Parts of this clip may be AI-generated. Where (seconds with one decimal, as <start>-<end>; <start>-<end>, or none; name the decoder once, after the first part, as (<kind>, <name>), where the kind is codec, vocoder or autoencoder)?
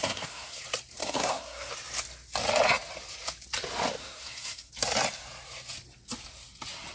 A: 0.0-0.6 (codec, SNAC); 1.0-1.7; 4.0-4.7